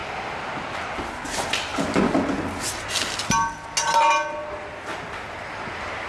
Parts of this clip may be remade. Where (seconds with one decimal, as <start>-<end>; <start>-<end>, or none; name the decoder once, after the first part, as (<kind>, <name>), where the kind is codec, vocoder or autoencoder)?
none